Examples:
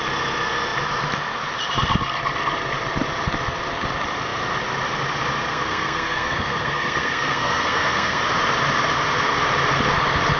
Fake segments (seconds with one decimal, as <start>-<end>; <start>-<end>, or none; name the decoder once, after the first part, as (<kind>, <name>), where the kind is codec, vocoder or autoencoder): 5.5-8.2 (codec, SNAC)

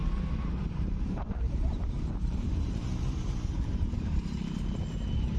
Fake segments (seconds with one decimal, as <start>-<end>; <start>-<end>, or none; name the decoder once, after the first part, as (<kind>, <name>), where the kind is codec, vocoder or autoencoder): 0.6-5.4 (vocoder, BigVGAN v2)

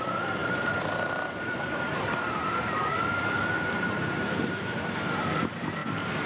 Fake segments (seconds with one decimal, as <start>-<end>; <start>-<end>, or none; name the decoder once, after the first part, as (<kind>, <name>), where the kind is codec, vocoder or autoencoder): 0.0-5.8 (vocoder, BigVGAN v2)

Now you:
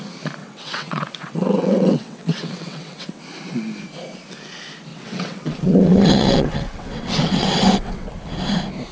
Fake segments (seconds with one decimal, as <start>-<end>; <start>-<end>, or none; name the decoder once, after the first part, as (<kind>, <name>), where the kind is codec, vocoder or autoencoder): 0.4-3.2 (vocoder, WaveNeXt); 4.9-8.1